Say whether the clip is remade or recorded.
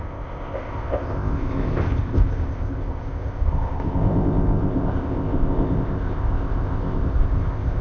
remade